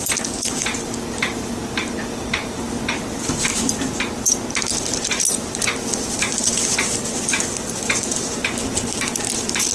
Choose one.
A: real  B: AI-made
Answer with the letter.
A